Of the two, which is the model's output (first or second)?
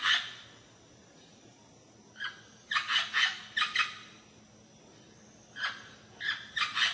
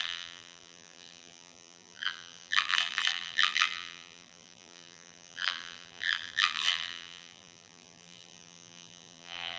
second